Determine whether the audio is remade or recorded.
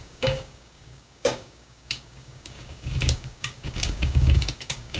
remade